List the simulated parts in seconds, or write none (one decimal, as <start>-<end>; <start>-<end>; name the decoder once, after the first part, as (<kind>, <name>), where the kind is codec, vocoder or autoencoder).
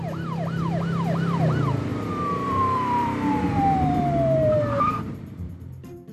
1.9-5.5 (vocoder, BigVGAN v2)